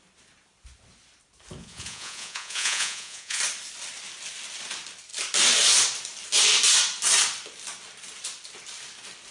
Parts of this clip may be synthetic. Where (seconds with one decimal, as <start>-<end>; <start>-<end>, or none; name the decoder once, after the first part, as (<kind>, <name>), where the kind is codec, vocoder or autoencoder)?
1.6-3.4 (vocoder, Vocos)